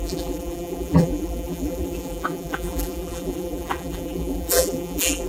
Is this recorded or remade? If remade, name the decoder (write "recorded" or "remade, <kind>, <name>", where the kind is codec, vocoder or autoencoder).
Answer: remade, vocoder, BigVGAN v2